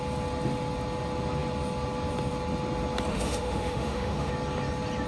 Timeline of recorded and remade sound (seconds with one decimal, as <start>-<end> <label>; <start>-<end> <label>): 0.0-3.1 recorded; 3.1-4.3 remade; 4.3-5.1 recorded

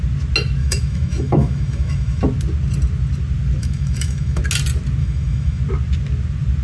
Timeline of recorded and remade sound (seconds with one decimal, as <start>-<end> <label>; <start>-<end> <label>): 0.0-0.6 recorded; 0.6-2.2 remade; 2.2-3.6 recorded; 3.6-4.4 remade; 4.4-5.0 recorded; 5.0-5.6 remade; 5.6-6.6 recorded

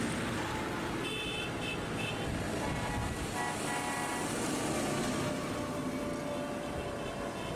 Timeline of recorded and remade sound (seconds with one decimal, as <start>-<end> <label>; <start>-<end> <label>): 0.0-7.6 recorded

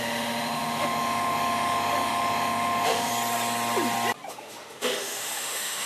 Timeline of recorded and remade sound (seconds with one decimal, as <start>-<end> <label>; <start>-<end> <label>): 0.0-3.1 remade; 3.1-4.3 recorded; 4.3-5.9 remade

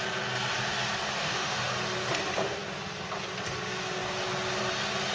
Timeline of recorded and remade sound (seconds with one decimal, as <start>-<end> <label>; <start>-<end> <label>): 0.0-1.2 recorded; 1.2-1.7 remade; 1.7-5.1 recorded

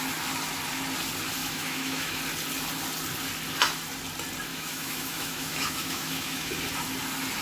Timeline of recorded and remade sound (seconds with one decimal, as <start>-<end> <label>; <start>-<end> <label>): 0.0-1.4 recorded; 1.4-2.2 remade; 2.2-4.5 recorded; 4.5-6.5 remade; 6.5-7.4 recorded

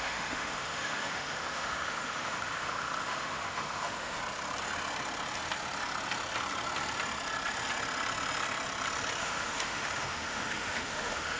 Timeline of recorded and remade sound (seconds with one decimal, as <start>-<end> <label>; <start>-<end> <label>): 0.0-4.2 remade; 4.2-9.2 recorded; 9.2-11.4 remade